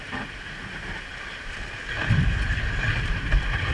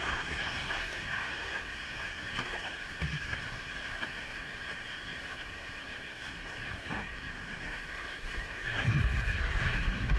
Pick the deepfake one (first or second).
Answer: second